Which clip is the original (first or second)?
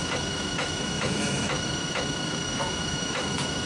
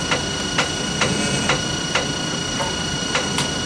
second